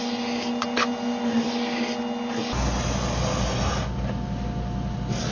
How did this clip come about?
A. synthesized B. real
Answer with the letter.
B